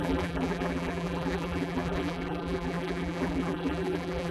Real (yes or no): no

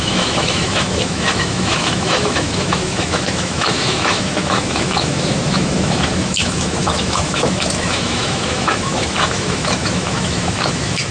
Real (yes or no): no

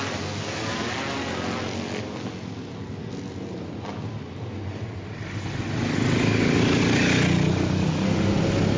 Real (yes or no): yes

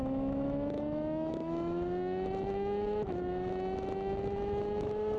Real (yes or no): no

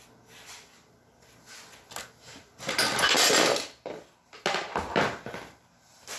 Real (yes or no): yes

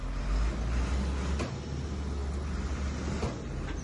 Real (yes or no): yes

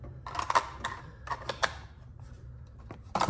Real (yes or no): yes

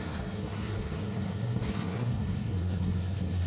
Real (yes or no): no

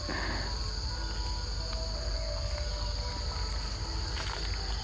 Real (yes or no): yes